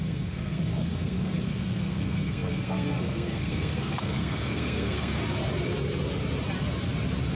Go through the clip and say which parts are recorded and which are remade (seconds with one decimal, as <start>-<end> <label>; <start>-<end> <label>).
0.0-5.2 remade; 5.2-7.3 recorded